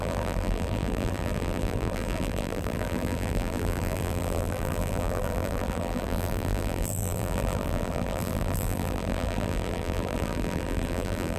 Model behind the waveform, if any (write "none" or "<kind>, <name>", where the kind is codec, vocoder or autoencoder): vocoder, BigVGAN v2